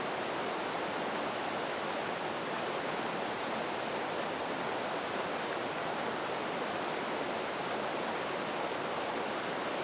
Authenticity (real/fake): real